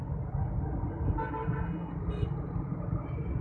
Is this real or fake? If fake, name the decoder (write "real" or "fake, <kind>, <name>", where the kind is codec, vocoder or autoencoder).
real